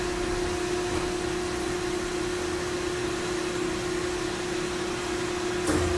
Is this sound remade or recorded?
recorded